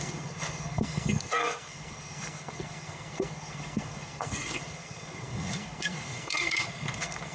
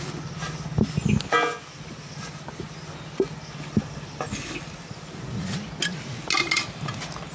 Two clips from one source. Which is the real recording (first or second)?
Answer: second